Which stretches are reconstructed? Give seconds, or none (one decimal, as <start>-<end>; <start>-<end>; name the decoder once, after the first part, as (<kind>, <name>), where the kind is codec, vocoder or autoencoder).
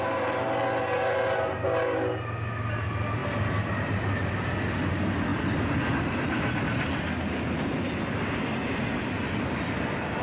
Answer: none